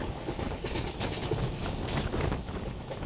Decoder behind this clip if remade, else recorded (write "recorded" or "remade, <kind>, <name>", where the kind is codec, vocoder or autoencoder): remade, codec, DAC